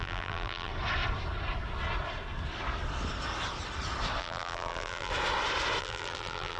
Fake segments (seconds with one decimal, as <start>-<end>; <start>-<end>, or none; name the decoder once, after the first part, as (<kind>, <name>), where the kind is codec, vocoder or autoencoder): 0.0-0.7 (vocoder, BigVGAN v2); 4.2-5.1; 5.8-6.6